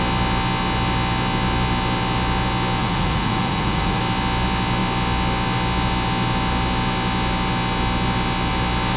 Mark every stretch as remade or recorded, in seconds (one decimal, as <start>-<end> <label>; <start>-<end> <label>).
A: 0.0-2.8 recorded; 2.8-4.0 remade; 4.0-9.0 recorded